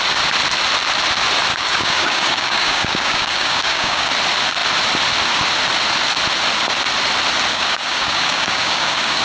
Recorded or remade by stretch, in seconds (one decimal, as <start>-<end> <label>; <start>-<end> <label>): 0.0-1.5 recorded; 1.5-4.1 remade; 4.1-7.5 recorded; 7.5-9.2 remade